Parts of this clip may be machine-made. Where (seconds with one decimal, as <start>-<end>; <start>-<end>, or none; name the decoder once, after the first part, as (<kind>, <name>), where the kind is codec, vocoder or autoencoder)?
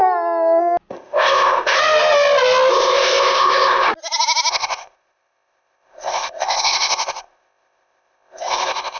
0.9-1.8 (codec, ZipCodec); 2.7-3.9; 4.5-9.0